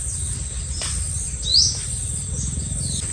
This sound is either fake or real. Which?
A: real